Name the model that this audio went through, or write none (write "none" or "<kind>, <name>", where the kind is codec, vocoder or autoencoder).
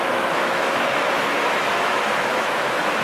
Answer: autoencoder, DAC-VAE